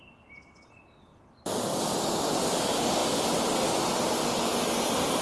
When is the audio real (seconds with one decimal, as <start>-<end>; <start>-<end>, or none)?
0.0-5.2